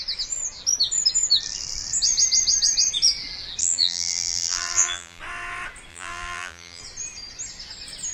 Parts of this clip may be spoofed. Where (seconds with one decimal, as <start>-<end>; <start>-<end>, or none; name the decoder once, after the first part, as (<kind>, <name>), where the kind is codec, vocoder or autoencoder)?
3.6-5.2 (vocoder, BigVGAN v2); 5.9-6.8